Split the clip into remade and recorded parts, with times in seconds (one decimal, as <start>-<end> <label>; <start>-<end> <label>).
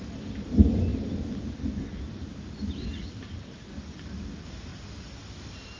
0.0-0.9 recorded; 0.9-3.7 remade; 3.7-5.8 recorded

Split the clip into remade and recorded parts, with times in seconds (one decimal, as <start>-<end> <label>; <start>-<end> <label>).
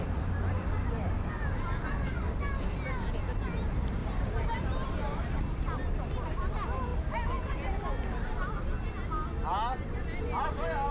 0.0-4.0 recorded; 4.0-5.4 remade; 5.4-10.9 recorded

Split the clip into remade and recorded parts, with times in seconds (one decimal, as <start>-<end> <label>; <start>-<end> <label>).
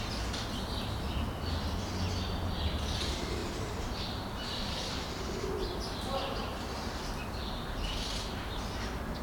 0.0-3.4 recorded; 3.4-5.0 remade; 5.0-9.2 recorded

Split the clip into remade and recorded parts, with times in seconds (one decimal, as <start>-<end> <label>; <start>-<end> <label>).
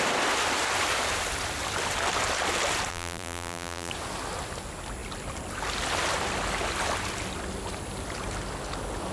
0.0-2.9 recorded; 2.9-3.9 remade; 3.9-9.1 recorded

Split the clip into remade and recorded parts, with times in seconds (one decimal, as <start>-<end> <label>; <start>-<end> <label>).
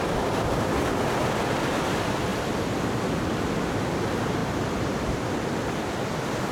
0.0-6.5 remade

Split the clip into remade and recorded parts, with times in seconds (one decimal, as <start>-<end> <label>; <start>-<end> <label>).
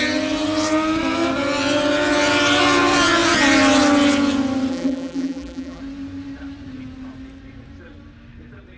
0.0-4.7 recorded; 4.7-5.8 remade; 5.8-8.8 recorded